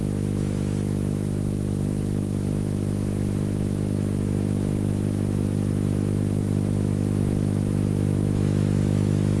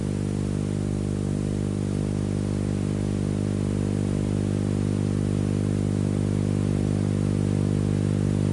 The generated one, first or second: first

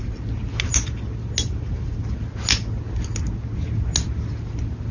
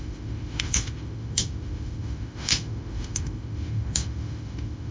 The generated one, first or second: second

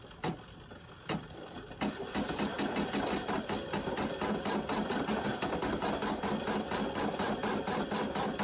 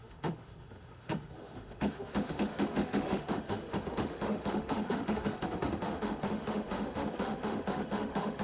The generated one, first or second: second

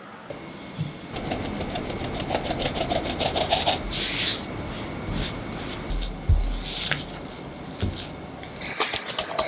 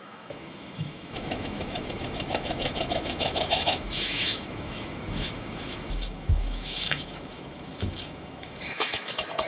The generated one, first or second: second